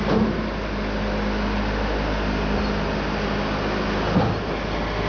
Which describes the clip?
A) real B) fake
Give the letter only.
A